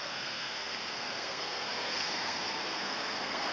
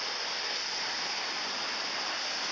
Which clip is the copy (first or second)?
first